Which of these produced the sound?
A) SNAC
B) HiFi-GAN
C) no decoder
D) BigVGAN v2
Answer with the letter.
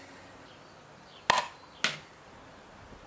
C